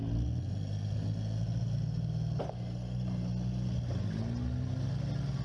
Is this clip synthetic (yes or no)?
no